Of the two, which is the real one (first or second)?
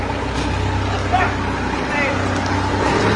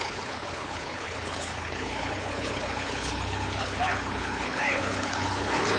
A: first